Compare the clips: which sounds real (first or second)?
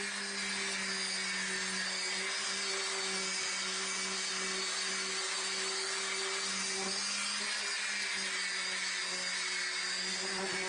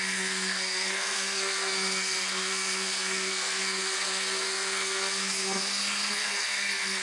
first